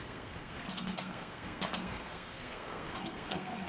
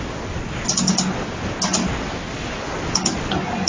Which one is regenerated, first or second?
first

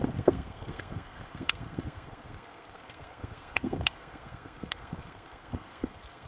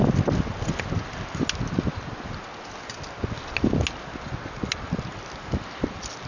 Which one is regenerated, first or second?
first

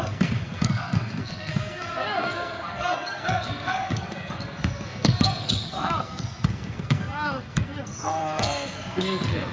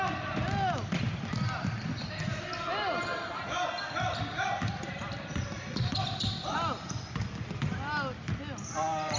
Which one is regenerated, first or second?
first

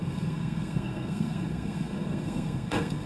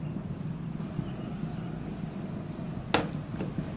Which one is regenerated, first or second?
first